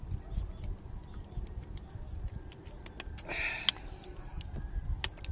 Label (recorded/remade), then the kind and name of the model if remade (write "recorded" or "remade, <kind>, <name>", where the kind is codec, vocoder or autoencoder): recorded